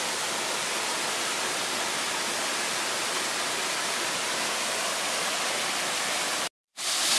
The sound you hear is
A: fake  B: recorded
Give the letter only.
B